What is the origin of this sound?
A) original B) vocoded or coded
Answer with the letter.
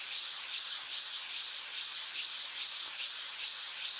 A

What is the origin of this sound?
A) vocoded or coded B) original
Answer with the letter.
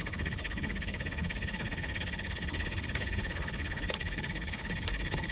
A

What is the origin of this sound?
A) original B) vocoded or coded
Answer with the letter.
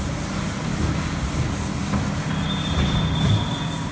A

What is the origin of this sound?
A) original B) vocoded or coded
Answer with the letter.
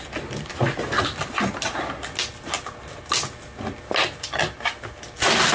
A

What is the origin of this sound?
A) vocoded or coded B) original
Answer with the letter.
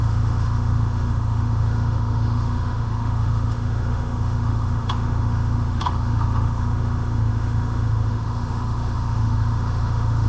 A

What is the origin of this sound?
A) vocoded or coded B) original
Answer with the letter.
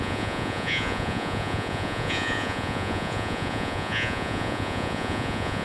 A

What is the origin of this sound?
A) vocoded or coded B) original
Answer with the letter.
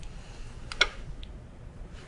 B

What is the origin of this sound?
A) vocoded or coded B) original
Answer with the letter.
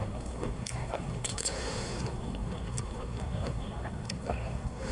A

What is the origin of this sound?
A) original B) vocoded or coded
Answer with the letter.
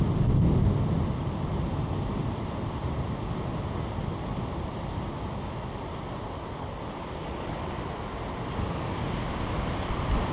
A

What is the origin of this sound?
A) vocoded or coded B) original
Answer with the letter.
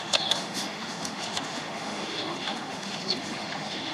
A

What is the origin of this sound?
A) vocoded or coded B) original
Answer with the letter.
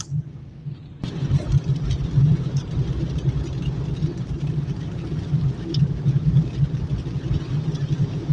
B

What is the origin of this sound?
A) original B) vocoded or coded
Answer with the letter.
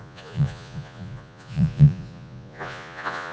B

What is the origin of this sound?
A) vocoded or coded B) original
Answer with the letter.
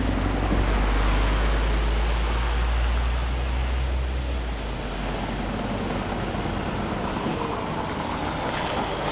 B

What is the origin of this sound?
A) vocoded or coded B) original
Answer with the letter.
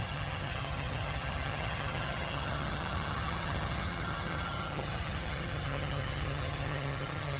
A